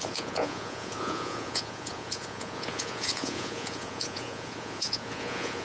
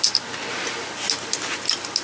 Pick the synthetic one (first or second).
first